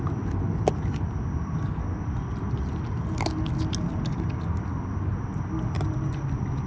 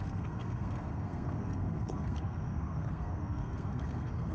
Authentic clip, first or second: first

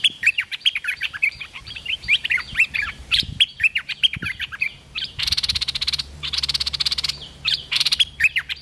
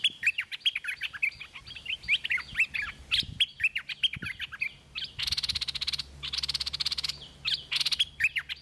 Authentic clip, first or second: second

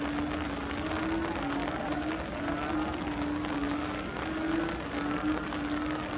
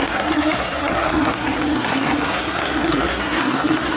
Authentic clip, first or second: first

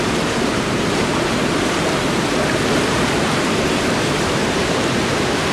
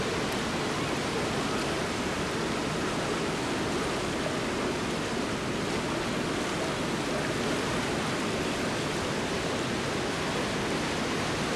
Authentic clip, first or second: second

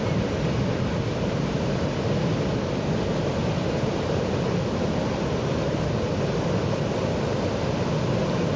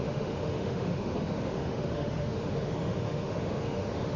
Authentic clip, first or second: first